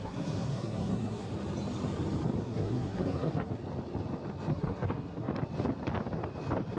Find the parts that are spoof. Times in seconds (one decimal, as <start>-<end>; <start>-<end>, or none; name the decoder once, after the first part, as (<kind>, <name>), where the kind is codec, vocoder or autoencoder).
0.0-1.3 (codec, SNAC); 2.4-3.6; 4.5-5.3